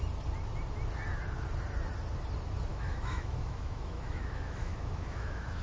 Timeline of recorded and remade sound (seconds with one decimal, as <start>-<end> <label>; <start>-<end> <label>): 0.0-2.7 recorded; 2.7-5.6 remade